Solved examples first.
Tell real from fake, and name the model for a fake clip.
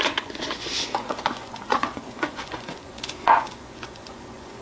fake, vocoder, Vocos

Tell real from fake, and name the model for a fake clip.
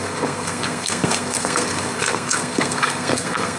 fake, codec, SNAC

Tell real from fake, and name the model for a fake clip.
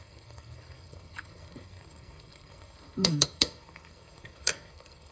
fake, codec, SNAC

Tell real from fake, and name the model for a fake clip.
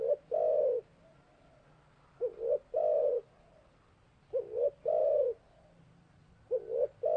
real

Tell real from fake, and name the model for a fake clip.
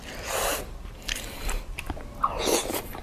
real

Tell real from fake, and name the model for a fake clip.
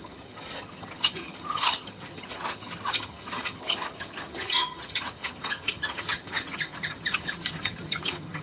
fake, vocoder, HiFi-GAN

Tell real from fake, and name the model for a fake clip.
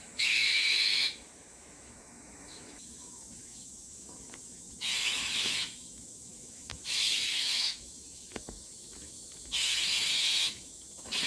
fake, autoencoder, DAC-VAE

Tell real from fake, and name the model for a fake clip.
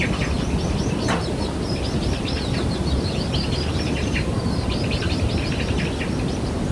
real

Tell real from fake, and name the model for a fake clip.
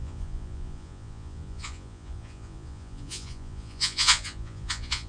fake, vocoder, Vocos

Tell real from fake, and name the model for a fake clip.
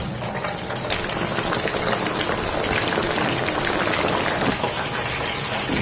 real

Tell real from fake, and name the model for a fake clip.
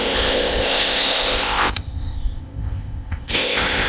fake, codec, ZipCodec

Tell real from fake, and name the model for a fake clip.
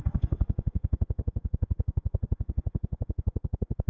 fake, codec, SNAC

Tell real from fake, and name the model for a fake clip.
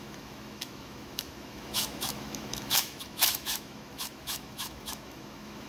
fake, autoencoder, DAC-VAE